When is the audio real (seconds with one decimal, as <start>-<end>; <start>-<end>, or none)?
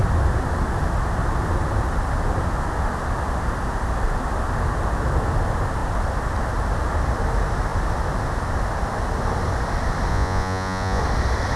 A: 0.0-10.1; 11.0-11.6